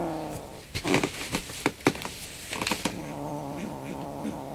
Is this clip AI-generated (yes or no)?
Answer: no